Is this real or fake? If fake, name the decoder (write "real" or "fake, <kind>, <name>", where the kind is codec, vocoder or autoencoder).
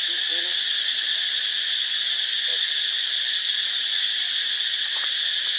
real